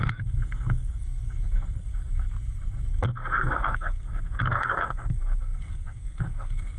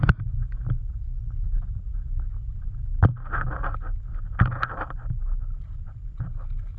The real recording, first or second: second